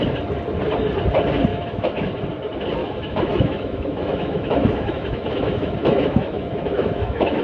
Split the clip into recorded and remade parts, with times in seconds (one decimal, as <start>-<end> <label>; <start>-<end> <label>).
0.0-1.5 recorded; 1.5-2.1 remade; 2.1-2.8 recorded; 2.8-7.4 remade